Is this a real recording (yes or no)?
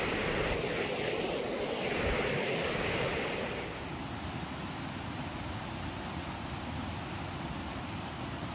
yes